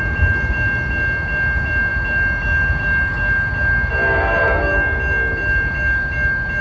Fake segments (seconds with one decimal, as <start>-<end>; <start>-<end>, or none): none